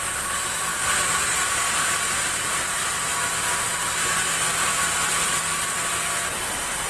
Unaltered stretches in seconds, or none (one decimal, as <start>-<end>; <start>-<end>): 0.0-6.9